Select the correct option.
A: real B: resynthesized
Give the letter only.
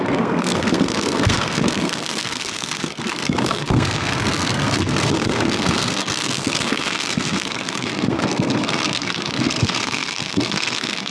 B